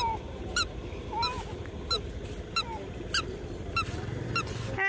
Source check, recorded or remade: recorded